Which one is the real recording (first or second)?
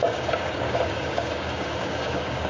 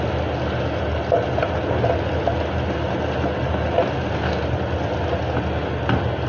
second